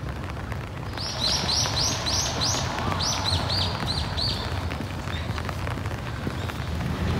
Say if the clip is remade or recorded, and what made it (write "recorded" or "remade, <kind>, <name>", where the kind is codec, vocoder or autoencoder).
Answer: recorded